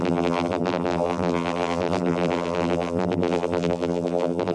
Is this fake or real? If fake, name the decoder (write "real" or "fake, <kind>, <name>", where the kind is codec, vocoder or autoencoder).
fake, vocoder, BigVGAN v2